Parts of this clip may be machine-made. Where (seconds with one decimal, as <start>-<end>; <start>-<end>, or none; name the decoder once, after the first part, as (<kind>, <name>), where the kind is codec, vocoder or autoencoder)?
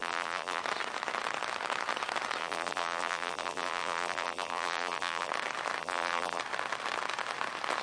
0.0-0.6 (vocoder, BigVGAN v2); 2.4-5.3; 5.8-6.4